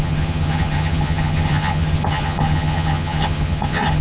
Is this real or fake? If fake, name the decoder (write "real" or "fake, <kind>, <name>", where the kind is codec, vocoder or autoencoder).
fake, vocoder, HiFi-GAN